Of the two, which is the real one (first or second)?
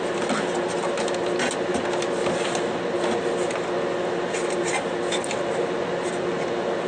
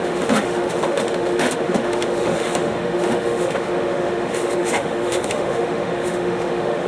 first